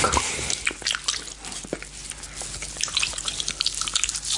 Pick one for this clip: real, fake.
real